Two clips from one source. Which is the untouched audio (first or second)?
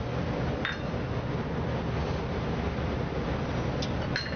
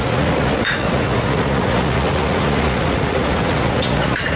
first